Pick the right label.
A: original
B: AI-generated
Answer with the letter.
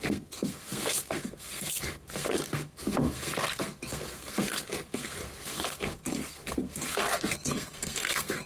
B